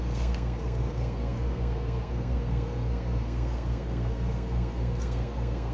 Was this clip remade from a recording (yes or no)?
yes